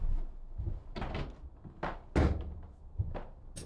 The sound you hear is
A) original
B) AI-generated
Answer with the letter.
A